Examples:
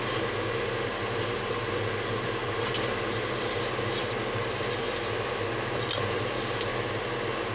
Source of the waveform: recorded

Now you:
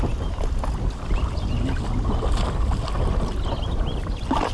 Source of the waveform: recorded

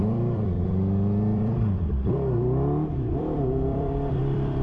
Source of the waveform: remade